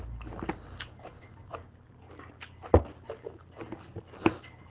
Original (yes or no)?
yes